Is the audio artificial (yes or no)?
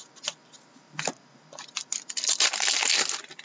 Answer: no